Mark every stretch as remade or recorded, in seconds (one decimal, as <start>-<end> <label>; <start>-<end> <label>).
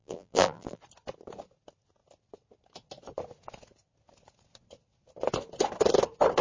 0.0-0.8 remade; 0.8-6.4 recorded